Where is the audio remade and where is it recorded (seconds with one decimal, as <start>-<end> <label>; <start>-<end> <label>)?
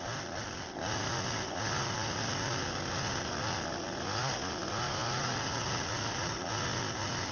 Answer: 0.0-7.3 recorded